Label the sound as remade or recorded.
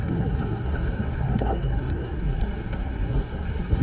remade